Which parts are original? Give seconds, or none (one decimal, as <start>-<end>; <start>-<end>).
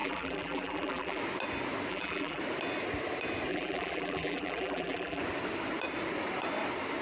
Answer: 1.2-1.9; 2.4-3.5; 5.2-7.0